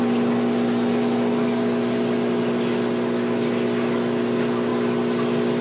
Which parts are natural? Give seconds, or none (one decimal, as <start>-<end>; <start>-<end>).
0.0-5.6